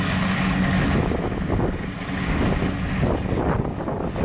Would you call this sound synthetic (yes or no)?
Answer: no